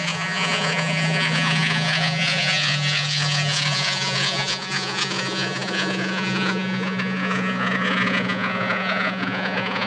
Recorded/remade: remade